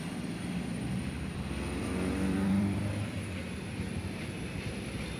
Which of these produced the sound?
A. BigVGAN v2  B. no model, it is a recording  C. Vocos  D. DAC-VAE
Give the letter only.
A